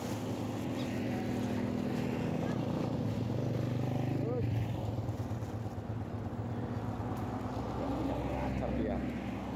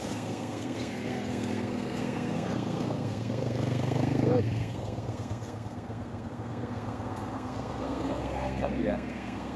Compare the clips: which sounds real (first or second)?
first